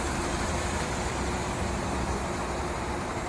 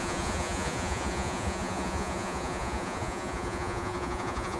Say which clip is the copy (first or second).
second